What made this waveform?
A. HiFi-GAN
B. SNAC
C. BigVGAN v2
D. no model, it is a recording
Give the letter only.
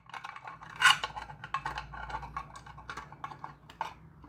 D